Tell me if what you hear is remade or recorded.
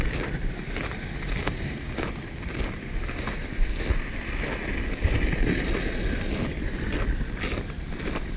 recorded